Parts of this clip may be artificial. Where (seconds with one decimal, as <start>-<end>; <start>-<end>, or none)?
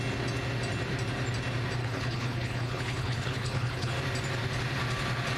1.8-3.9